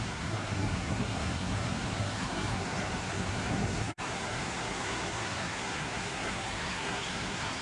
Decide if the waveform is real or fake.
fake